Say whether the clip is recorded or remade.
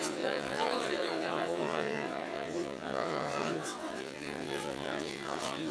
remade